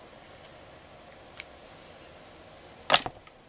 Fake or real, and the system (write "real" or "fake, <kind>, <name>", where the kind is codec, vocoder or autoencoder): real